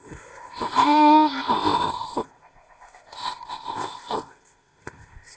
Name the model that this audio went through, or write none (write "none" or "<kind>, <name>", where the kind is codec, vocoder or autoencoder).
codec, ZipCodec